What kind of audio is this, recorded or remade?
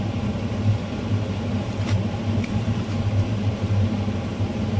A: remade